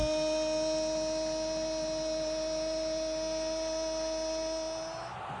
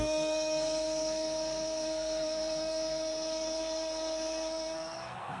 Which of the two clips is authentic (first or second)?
first